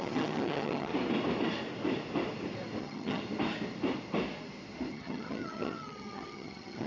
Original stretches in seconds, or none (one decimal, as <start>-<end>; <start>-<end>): 0.9-2.8; 3.2-4.9